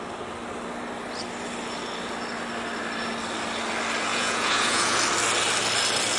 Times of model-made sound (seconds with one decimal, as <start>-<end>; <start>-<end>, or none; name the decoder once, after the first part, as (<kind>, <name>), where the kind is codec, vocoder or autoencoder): 4.1-5.0 (vocoder, Vocos)